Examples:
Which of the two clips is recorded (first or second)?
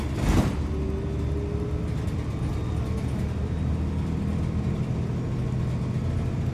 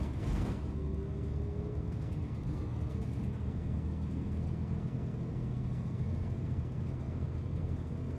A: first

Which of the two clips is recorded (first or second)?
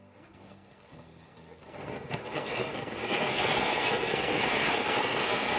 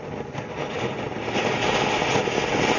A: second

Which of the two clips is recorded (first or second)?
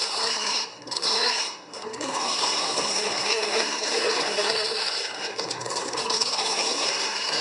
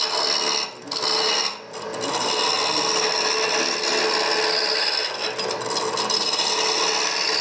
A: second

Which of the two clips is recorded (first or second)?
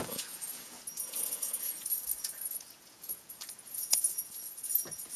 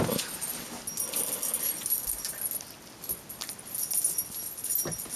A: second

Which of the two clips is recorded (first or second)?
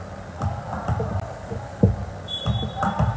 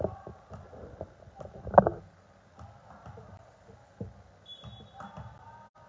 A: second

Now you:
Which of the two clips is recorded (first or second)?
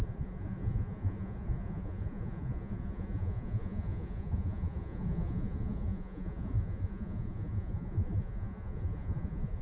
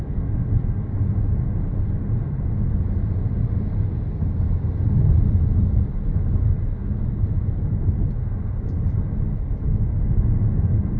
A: second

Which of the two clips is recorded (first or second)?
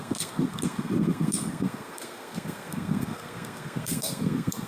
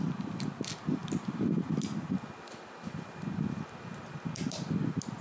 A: second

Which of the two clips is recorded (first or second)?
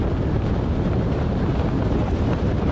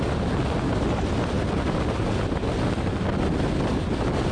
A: second